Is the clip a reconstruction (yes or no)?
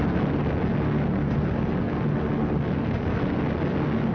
no